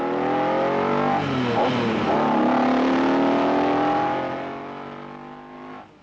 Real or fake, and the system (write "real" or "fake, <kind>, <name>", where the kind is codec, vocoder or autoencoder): real